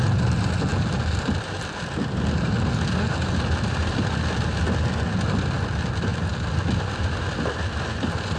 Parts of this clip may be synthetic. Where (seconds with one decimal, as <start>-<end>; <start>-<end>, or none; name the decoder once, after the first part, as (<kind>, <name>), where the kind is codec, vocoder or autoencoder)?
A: 0.7-2.1 (vocoder, BigVGAN v2); 3.8-4.6; 6.1-6.6